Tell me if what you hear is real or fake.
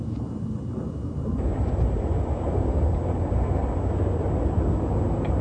real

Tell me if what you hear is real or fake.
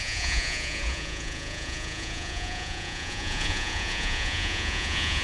fake